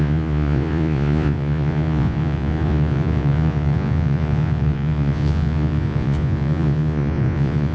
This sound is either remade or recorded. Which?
remade